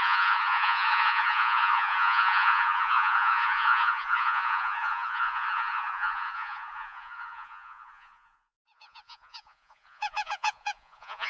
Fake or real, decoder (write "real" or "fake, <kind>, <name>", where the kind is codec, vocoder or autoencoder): fake, vocoder, Vocos